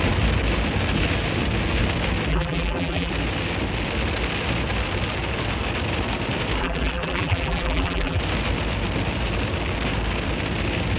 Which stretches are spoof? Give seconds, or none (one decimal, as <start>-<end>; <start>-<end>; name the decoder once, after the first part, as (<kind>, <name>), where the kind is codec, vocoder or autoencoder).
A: 2.3-3.1 (vocoder, BigVGAN v2); 6.6-8.2